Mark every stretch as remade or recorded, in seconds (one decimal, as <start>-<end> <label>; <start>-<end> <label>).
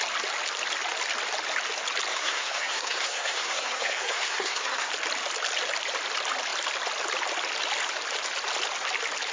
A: 0.0-2.1 recorded; 2.1-4.9 remade; 4.9-9.3 recorded